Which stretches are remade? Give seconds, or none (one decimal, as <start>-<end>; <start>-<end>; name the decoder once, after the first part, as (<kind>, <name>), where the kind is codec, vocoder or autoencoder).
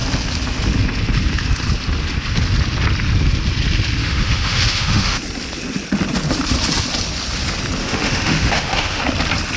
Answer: 4.0-5.2 (autoencoder, DAC-VAE); 7.8-9.0